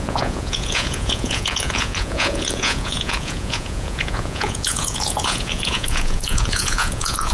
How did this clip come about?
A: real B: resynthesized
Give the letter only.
B